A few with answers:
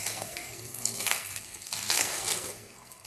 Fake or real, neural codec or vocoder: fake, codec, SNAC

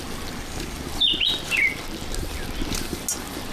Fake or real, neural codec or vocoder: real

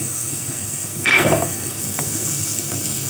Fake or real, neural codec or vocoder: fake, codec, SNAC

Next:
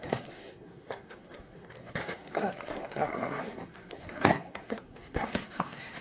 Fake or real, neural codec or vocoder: fake, codec, SNAC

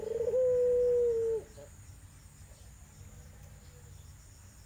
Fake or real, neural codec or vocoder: real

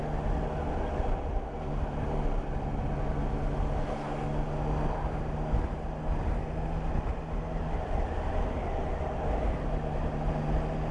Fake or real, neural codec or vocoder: real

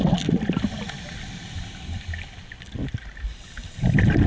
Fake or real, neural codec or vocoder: real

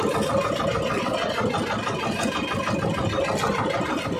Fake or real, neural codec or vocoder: real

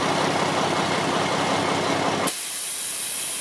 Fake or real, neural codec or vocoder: real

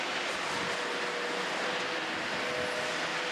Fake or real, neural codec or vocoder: real